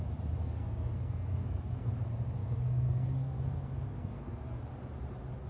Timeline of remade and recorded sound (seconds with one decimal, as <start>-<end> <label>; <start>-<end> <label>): 0.0-0.4 recorded; 0.4-1.9 remade; 1.9-2.4 recorded; 2.4-4.6 remade; 4.6-5.5 recorded